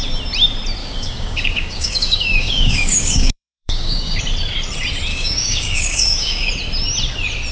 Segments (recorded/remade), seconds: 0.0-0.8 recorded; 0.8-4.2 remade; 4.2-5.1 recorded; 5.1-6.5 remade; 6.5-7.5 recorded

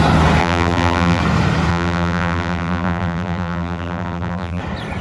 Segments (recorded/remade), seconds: 0.0-0.4 recorded; 0.4-1.2 remade; 1.2-1.7 recorded; 1.7-4.6 remade; 4.6-5.0 recorded

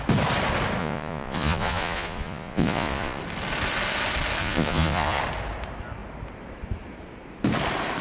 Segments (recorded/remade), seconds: 0.0-0.8 recorded; 0.8-3.2 remade; 3.2-4.4 recorded; 4.4-5.2 remade; 5.2-8.0 recorded

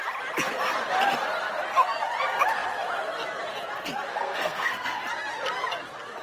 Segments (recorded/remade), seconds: 0.0-4.1 recorded; 4.1-5.0 remade; 5.0-6.2 recorded

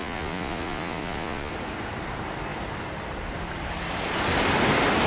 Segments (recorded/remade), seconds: 0.0-1.5 remade; 1.5-5.1 recorded